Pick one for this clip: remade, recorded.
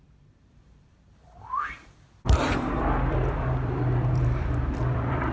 remade